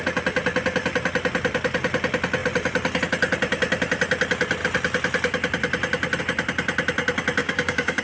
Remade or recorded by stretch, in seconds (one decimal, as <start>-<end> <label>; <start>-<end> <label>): 0.0-7.4 recorded; 7.4-8.0 remade

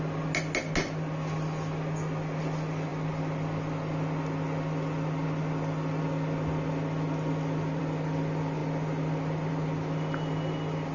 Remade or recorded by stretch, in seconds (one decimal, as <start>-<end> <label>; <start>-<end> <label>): 0.0-10.9 recorded

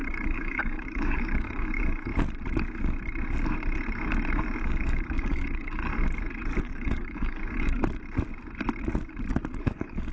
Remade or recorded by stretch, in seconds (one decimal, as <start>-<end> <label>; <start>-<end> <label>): 0.0-2.1 remade; 2.1-4.8 recorded; 4.8-5.8 remade; 5.8-6.6 recorded; 6.6-7.8 remade; 7.8-9.3 recorded; 9.3-10.1 remade

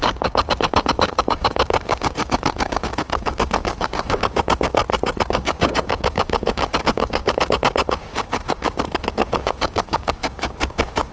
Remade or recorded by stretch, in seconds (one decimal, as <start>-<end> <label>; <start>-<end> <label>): 0.0-4.8 remade; 4.8-5.3 recorded; 5.3-11.1 remade

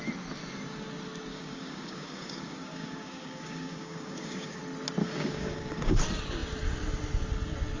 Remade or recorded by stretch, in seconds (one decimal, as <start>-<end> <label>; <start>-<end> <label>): 0.0-1.3 recorded; 1.3-4.6 remade; 4.6-5.0 recorded; 5.0-6.0 remade; 6.0-7.8 recorded

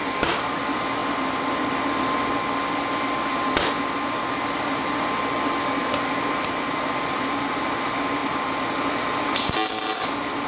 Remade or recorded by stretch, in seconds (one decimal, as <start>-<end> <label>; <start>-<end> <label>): 0.0-0.6 remade; 0.6-10.5 recorded

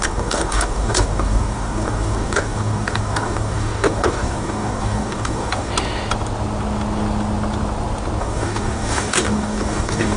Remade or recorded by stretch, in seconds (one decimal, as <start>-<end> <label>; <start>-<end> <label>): 0.0-5.7 remade; 5.7-8.2 recorded; 8.2-10.2 remade